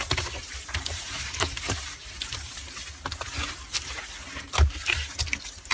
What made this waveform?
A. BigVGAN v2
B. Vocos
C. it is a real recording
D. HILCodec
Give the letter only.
C